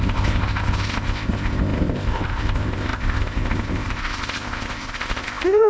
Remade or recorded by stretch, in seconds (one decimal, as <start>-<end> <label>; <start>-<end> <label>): 0.0-5.7 remade